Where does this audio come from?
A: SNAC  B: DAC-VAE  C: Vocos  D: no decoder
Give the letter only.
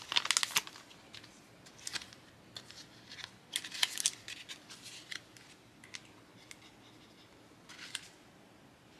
D